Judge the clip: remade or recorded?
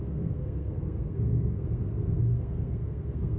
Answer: remade